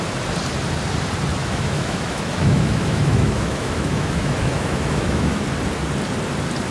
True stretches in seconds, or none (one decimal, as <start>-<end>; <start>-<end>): 0.0-1.4; 5.4-6.7